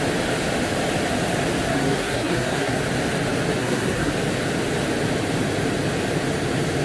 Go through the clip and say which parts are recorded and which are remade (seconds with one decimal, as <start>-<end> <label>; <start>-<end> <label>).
0.0-1.7 recorded; 1.7-2.8 remade; 2.8-3.6 recorded; 3.6-4.1 remade; 4.1-6.8 recorded